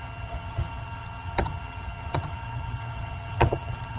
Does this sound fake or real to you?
fake